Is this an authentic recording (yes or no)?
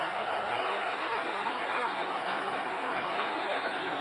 no